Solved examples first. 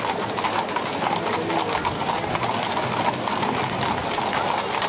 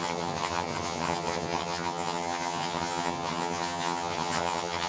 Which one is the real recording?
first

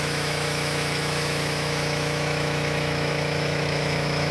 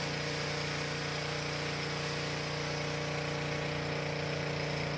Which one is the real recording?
second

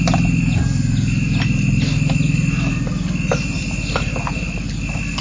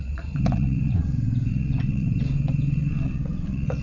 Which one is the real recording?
first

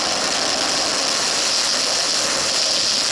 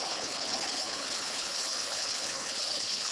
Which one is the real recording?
first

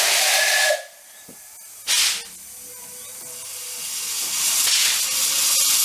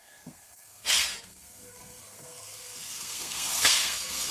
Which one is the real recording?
first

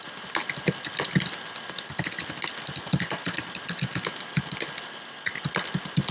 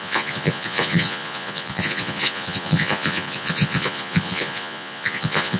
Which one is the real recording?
first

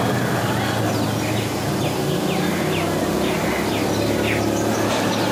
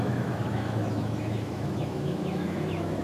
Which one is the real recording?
first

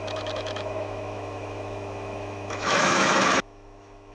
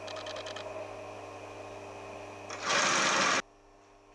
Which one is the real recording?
second